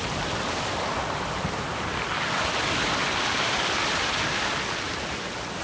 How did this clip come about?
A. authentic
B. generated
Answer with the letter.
A